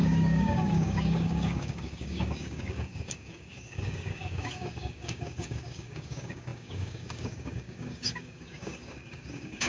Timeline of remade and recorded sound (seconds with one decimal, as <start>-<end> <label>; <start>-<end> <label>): 0.0-9.7 remade